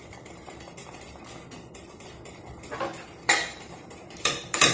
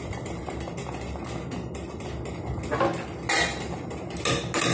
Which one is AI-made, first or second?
first